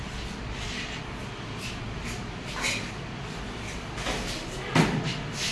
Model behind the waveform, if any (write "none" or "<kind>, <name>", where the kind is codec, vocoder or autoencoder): none